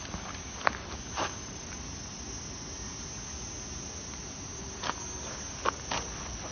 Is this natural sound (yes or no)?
yes